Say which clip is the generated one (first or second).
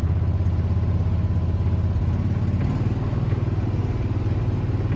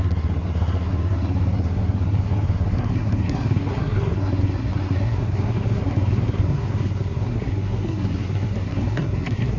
second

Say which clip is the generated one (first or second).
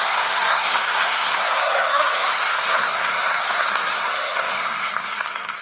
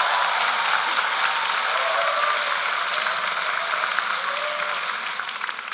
first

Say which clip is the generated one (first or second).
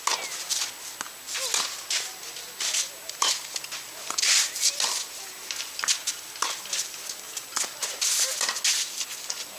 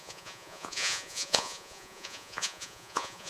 second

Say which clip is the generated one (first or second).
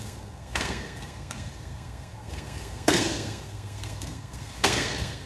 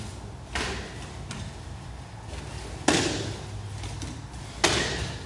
first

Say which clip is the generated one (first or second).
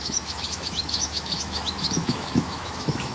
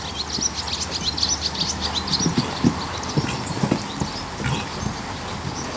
first